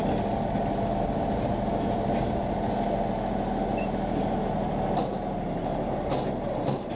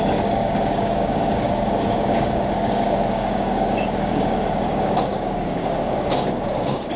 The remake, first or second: second